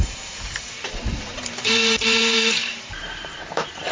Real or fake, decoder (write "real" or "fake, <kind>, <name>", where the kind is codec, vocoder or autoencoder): fake, vocoder, BigVGAN v2